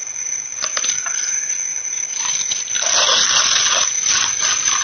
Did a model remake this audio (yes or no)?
no